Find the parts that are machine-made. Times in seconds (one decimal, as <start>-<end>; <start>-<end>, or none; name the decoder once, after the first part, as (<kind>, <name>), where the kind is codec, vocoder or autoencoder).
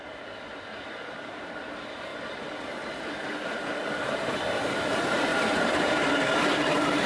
0.7-1.7 (vocoder, BigVGAN v2); 5.3-7.1